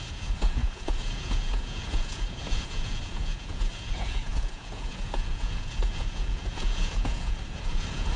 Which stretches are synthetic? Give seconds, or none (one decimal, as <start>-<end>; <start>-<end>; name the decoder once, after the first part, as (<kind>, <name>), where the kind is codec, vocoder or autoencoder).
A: 0.0-8.2 (vocoder, Vocos)

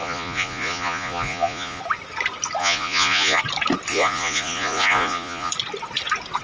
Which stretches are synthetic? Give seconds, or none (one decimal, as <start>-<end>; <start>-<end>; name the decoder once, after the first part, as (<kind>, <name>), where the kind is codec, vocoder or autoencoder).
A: 0.0-1.8 (vocoder, Vocos); 2.6-3.4; 3.9-5.5

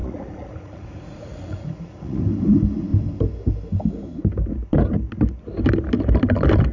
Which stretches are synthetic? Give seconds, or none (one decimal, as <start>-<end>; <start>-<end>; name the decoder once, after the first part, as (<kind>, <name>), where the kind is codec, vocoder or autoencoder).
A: 0.0-2.2 (vocoder, Vocos)